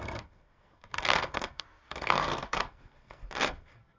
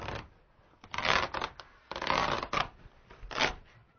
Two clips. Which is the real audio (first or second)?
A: second